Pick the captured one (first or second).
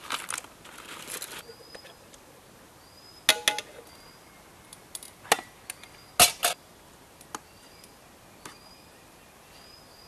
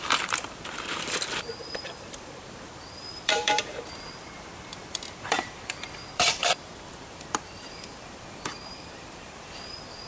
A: first